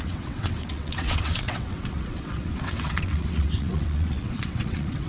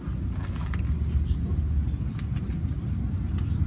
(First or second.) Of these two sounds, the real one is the second